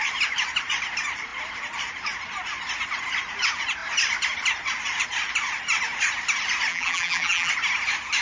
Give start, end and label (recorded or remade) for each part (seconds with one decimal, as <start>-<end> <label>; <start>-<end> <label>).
0.0-6.7 recorded; 6.7-7.5 remade; 7.5-8.2 recorded